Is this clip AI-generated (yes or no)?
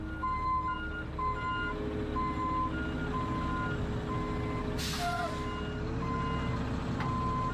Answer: no